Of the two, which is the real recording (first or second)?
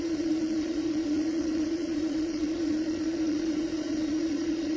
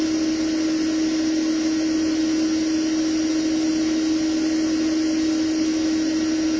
second